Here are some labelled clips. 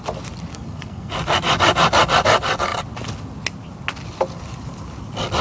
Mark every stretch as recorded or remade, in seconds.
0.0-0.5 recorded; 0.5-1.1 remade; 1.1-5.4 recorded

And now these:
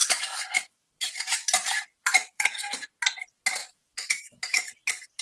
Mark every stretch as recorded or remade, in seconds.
0.0-1.5 remade; 1.5-2.0 recorded; 2.0-2.7 remade; 2.7-3.6 recorded; 3.6-4.7 remade; 4.7-5.2 recorded

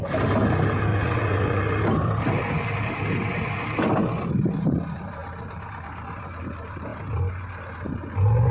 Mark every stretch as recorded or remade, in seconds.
0.0-0.9 recorded; 0.9-1.6 remade; 1.6-8.5 recorded

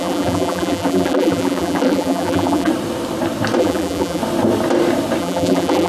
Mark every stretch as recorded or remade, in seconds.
0.0-2.7 remade; 2.7-3.6 recorded; 3.6-4.2 remade; 4.2-5.2 recorded; 5.2-5.9 remade

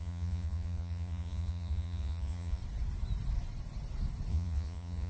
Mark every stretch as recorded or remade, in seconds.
0.0-2.6 remade; 2.6-4.3 recorded; 4.3-5.1 remade

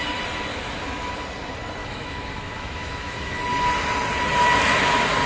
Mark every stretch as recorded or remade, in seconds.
0.0-0.5 recorded; 0.5-1.1 remade; 1.1-1.8 recorded; 1.8-3.4 remade; 3.4-5.3 recorded